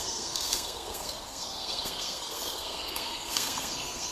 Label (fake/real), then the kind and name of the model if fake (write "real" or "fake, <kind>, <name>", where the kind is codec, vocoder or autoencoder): fake, codec, SNAC